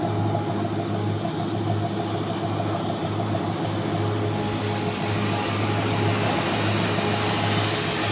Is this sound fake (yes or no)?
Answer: no